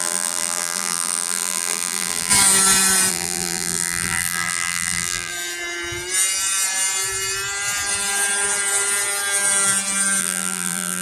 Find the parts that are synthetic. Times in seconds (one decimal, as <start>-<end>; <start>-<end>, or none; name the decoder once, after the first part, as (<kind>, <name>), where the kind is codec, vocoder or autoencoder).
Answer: 0.0-2.3 (vocoder, BigVGAN v2); 3.1-5.3; 10.2-11.0